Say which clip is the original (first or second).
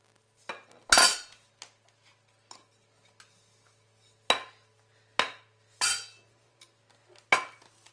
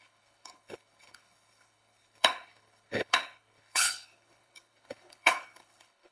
first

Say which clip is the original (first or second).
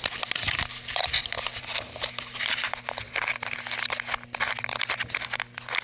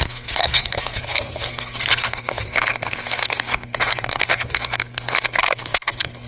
first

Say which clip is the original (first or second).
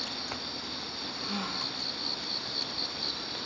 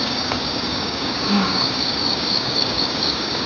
first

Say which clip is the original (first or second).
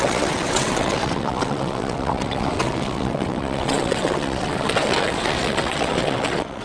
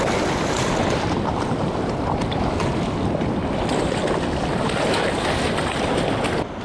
second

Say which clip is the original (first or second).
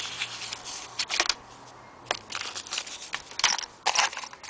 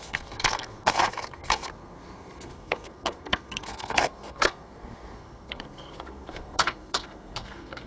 first